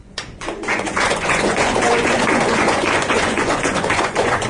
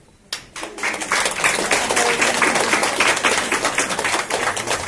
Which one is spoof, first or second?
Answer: first